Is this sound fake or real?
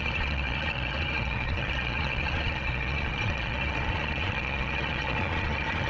fake